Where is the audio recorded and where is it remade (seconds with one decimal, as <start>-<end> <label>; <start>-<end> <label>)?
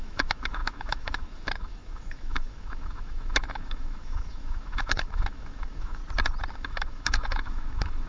0.0-6.0 remade; 6.0-6.5 recorded; 6.5-8.1 remade